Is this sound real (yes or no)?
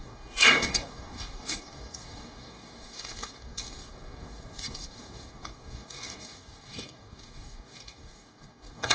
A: no